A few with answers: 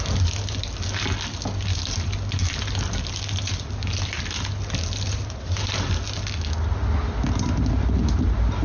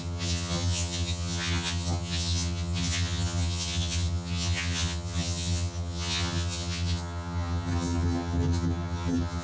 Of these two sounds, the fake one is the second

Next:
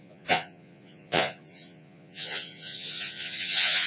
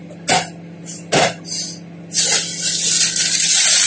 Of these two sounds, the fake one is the first